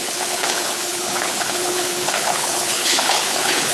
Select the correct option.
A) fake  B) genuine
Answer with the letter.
A